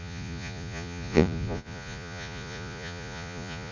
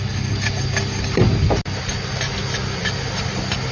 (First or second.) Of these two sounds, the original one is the second